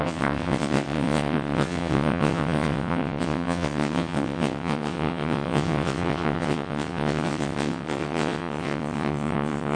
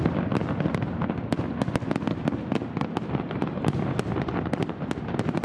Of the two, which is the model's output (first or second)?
first